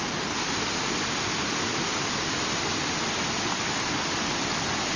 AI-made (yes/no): no